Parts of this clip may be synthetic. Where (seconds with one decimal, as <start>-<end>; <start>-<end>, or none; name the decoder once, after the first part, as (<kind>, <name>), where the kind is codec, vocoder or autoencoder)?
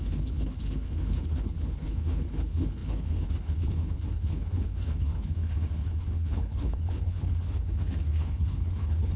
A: 0.0-9.2 (codec, HILCodec)